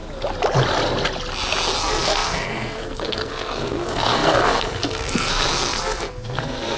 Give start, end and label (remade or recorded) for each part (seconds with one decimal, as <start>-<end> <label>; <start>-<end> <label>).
0.0-1.8 recorded; 1.8-6.8 remade